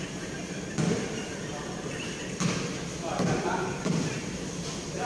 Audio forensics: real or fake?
fake